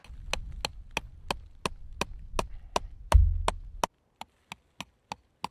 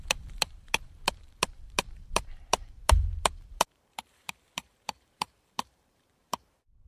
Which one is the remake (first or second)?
second